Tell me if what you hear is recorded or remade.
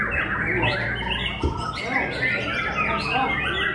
recorded